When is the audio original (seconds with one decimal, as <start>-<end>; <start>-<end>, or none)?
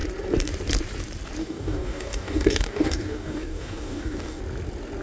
0.0-1.4; 4.4-5.0